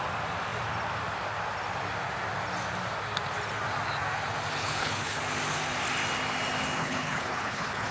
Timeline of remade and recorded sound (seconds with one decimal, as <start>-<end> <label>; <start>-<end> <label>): 0.0-4.6 recorded; 4.6-5.2 remade; 5.2-6.8 recorded; 6.8-7.9 remade

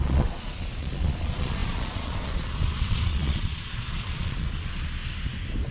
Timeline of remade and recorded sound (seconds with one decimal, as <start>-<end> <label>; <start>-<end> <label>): 0.0-5.0 remade; 5.0-5.7 recorded

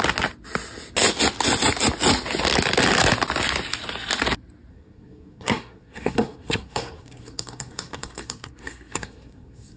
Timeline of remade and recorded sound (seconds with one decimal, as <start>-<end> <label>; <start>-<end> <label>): 0.0-4.7 recorded; 4.7-9.8 remade

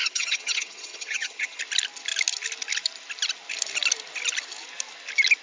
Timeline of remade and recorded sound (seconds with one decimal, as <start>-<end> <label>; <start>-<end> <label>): 0.0-1.6 remade; 1.6-5.4 recorded

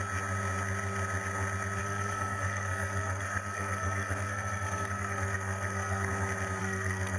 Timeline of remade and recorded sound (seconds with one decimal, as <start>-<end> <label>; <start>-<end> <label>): 0.0-1.8 recorded; 1.8-6.1 remade; 6.1-6.6 recorded; 6.6-7.2 remade

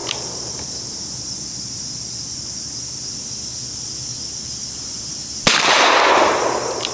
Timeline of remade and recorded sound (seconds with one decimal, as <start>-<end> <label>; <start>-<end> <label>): 0.0-6.9 recorded